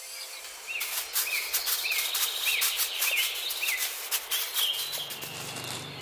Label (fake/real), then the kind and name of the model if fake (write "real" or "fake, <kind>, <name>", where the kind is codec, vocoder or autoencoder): real